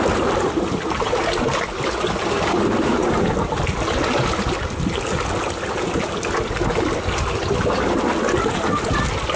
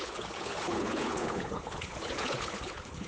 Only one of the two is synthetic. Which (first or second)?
second